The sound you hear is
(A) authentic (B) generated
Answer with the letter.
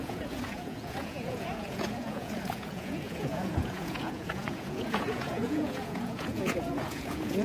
B